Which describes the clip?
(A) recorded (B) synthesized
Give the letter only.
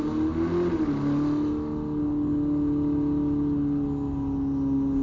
A